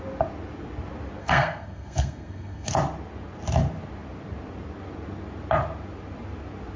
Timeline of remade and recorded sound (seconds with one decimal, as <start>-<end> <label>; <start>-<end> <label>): 0.0-1.2 recorded; 1.2-2.7 remade; 2.7-6.8 recorded